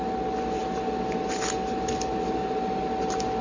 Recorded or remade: recorded